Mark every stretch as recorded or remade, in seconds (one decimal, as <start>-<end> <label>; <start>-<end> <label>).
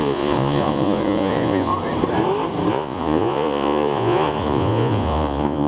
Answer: 0.0-1.7 remade; 1.7-2.7 recorded; 2.7-5.7 remade